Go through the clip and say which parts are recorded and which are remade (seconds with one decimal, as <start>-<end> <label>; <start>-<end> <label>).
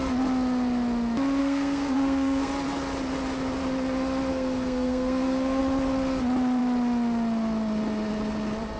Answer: 0.0-1.4 recorded; 1.4-2.5 remade; 2.5-4.3 recorded; 4.3-5.6 remade; 5.6-8.8 recorded